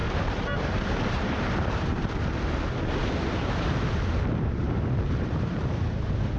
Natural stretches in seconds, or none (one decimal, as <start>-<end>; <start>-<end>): none